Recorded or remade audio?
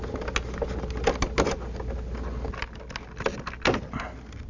recorded